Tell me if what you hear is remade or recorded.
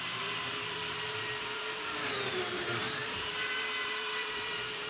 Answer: remade